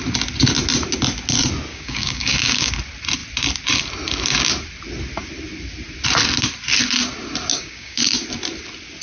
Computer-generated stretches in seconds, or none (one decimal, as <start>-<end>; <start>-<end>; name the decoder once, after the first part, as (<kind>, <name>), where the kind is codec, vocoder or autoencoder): 1.7-2.7 (codec, DAC); 7.5-8.0